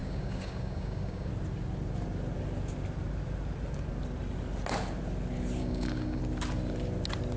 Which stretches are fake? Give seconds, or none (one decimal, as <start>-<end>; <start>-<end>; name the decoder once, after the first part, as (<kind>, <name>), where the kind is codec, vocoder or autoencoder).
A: 0.0-1.3 (codec, DAC); 5.6-6.2